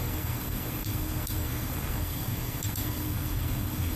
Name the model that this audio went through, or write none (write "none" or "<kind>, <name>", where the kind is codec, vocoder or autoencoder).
codec, SNAC